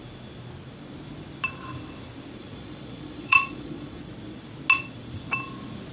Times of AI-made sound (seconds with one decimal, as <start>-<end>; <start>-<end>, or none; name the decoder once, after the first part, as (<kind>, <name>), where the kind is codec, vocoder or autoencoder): 2.4-4.0 (vocoder, Vocos)